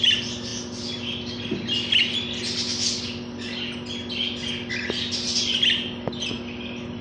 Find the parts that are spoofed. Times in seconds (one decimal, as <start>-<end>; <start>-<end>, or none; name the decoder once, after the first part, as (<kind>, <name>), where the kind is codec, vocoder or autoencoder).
none